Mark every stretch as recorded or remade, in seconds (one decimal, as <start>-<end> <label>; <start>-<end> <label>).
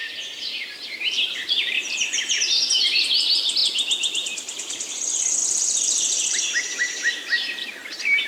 0.0-1.1 remade; 1.1-5.4 recorded; 5.4-8.3 remade